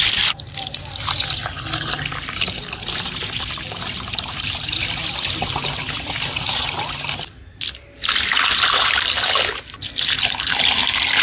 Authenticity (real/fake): real